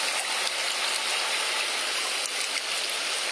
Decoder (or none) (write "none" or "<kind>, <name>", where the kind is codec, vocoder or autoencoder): none